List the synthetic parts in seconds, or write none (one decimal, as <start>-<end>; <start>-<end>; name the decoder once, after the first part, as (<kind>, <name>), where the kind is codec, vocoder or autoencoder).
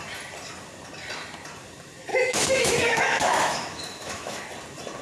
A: 2.1-4.4 (autoencoder, DAC-VAE)